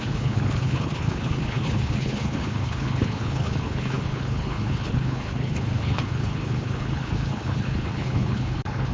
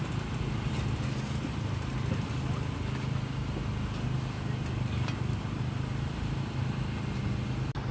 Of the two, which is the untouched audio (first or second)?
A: second